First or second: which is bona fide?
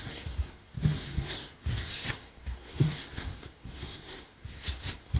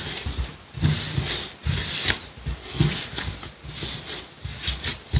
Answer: second